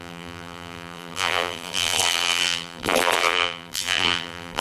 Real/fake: fake